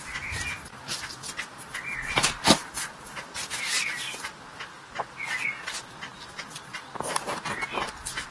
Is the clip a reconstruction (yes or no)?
no